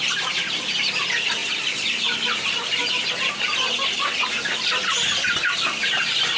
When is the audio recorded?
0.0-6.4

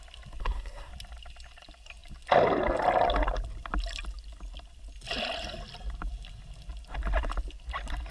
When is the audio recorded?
0.0-0.4; 0.9-8.1